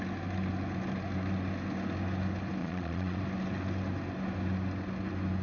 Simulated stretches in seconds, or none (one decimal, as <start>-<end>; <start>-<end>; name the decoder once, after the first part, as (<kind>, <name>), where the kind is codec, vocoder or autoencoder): 2.6-3.2 (vocoder, Vocos)